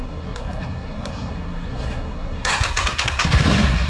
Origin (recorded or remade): remade